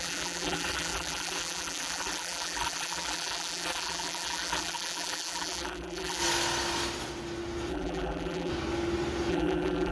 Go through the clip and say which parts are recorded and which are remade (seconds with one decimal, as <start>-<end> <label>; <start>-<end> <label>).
0.0-6.2 remade; 6.2-7.7 recorded; 7.7-8.5 remade; 8.5-9.3 recorded; 9.3-9.9 remade